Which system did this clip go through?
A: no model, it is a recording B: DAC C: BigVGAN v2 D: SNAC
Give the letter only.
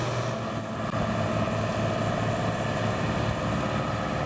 A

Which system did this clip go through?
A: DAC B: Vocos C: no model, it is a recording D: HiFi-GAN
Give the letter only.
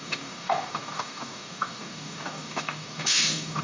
A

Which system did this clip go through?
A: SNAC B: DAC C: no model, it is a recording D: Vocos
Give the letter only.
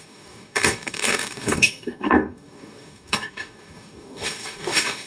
B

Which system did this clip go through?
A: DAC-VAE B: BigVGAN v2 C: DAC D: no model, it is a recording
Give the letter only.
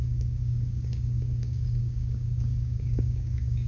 C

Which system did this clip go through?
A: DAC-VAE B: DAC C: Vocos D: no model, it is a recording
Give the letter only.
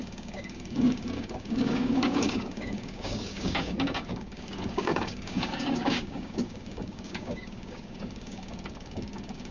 B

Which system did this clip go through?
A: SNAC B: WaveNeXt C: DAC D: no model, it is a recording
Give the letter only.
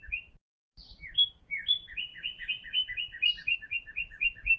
D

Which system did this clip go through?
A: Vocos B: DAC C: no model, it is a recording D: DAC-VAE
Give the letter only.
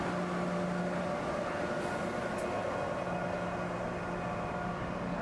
C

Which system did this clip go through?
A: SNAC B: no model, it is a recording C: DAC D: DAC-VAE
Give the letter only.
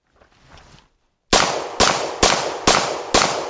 B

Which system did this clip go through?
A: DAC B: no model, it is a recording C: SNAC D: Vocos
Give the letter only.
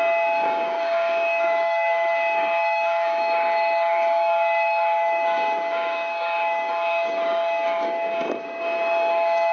A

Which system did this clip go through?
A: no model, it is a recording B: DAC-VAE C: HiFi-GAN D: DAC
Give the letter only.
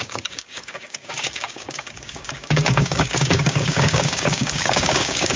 D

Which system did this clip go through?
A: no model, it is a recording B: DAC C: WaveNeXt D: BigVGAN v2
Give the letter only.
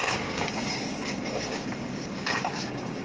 B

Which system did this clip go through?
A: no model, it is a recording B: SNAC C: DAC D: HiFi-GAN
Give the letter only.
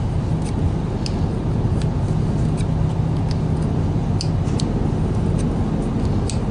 A